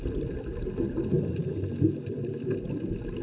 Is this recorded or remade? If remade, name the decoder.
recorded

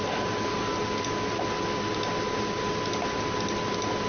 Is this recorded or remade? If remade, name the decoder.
recorded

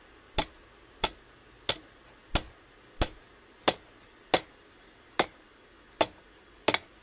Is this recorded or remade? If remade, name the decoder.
recorded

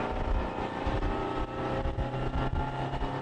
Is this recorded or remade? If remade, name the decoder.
recorded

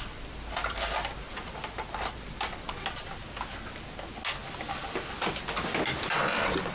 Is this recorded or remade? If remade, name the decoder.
recorded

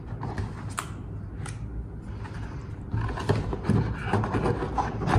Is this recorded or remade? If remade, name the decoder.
recorded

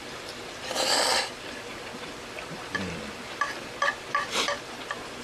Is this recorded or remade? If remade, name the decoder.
remade, vocoder, BigVGAN v2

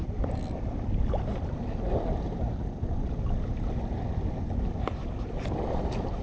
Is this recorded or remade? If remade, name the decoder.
recorded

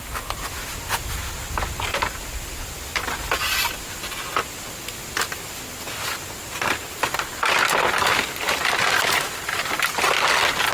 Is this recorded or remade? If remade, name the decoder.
recorded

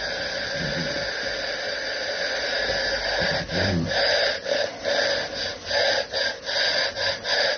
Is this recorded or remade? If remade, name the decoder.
recorded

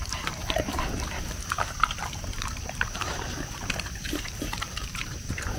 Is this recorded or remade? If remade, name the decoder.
remade, vocoder, BigVGAN v2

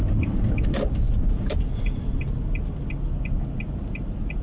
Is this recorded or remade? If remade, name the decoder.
remade, vocoder, BigVGAN v2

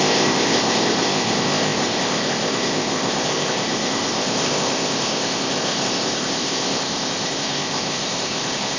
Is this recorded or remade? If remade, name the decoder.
remade, codec, ZipCodec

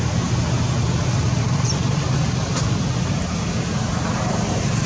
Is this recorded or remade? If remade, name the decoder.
recorded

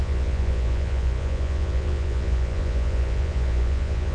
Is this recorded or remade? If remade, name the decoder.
remade, vocoder, Vocos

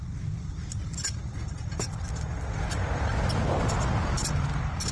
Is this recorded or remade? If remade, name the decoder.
recorded